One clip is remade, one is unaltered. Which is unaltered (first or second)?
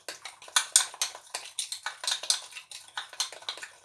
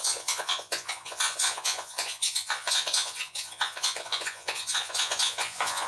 first